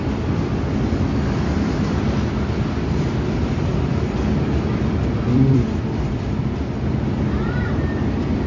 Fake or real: fake